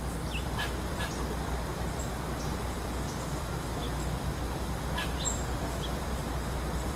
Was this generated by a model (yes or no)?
yes